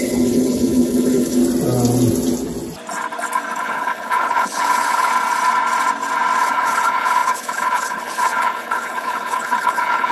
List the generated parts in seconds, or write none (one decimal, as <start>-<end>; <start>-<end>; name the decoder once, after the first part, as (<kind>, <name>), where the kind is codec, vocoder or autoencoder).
0.0-1.4 (codec, HILCodec); 3.6-5.1; 6.4-10.1